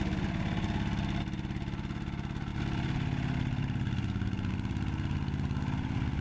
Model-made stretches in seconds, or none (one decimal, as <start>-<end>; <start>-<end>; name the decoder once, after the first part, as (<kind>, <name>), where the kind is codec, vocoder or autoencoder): none